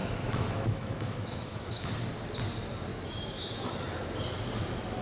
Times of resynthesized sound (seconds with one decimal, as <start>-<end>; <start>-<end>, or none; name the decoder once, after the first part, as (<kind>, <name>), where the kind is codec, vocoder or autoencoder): 0.0-1.9 (autoencoder, DAC-VAE); 2.9-3.7